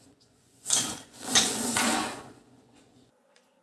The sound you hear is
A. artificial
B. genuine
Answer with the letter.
A